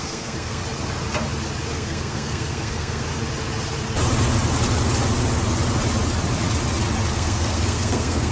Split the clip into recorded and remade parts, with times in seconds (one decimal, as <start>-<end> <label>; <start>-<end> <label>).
0.0-0.6 remade; 0.6-1.7 recorded; 1.7-3.1 remade; 3.1-7.1 recorded; 7.1-8.3 remade